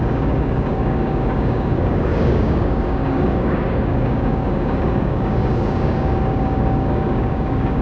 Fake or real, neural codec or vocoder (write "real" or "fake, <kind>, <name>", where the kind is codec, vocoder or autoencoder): fake, codec, DAC